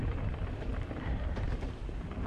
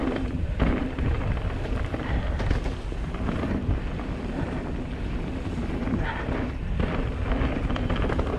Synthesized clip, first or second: first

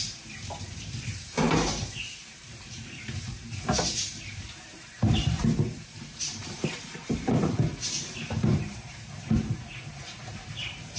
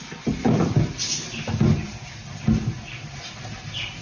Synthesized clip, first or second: first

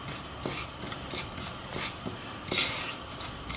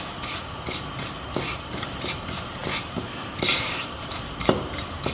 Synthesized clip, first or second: second